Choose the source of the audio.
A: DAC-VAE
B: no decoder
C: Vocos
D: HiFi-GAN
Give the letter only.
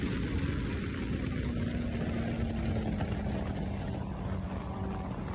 B